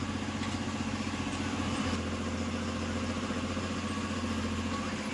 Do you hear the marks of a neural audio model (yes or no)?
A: no